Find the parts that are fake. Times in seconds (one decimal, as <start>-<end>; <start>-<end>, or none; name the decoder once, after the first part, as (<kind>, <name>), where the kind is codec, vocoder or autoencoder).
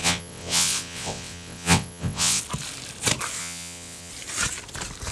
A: 0.0-2.4 (vocoder, WaveNeXt); 3.4-4.1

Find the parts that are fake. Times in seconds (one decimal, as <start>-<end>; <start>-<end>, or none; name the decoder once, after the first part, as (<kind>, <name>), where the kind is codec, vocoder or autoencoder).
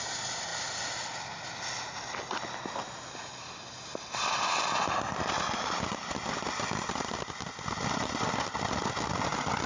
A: none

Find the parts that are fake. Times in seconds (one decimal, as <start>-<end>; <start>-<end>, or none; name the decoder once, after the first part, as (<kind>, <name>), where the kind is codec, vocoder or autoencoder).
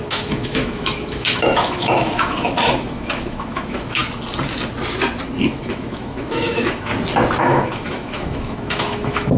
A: 0.0-4.0 (autoencoder, DAC-VAE); 5.5-6.9; 7.4-9.4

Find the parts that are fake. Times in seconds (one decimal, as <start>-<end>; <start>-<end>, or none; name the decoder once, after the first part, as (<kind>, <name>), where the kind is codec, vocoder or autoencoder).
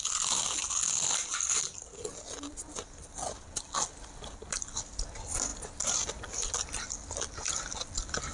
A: none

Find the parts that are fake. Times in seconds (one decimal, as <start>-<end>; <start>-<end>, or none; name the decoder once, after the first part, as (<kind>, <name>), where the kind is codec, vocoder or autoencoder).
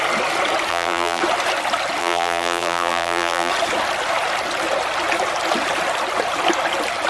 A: 0.7-1.2 (vocoder, BigVGAN v2); 2.0-3.5